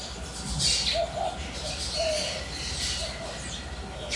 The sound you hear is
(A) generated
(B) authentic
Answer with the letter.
B